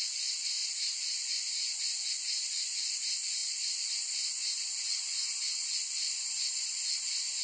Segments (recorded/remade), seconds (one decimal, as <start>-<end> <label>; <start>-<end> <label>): 0.0-7.4 recorded